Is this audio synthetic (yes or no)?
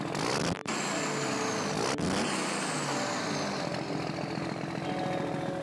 no